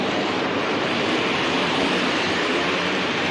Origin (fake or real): fake